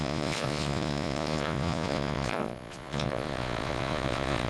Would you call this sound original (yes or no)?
no